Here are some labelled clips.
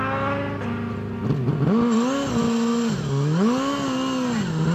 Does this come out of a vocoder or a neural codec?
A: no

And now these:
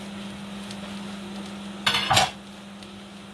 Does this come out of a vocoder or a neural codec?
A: no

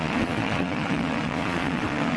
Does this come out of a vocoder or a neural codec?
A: yes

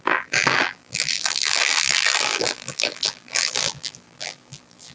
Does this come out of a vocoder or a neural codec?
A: yes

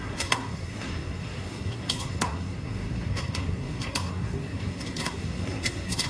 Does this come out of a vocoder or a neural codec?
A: yes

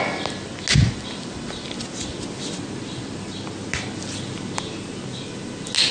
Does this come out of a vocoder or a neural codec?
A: no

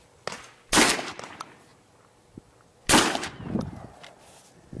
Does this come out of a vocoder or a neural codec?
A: no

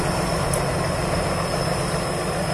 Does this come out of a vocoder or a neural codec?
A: no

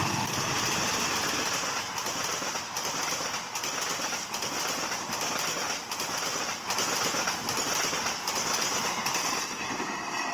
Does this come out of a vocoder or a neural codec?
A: yes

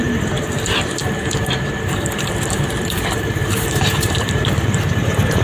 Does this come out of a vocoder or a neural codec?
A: yes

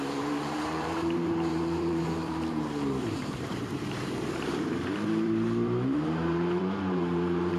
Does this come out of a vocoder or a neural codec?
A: yes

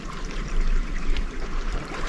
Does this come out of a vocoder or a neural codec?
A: yes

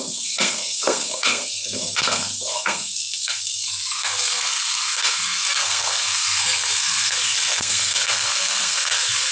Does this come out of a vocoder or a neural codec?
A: yes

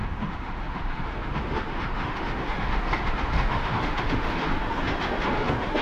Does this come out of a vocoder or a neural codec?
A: yes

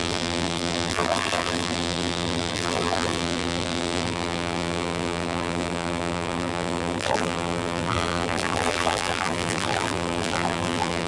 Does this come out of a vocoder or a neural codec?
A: yes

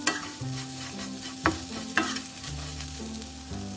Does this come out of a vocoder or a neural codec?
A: no